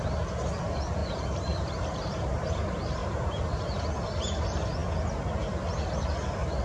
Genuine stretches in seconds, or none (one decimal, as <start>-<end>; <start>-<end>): 0.0-1.0; 2.5-3.0; 3.6-6.6